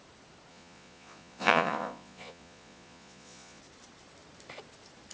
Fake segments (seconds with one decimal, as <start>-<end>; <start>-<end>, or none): 0.5-3.6